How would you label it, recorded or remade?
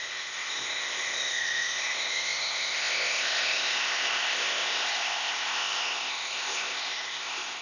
remade